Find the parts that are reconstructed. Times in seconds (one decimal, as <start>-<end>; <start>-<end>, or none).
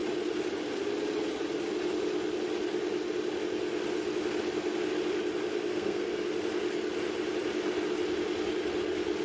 5.5-6.2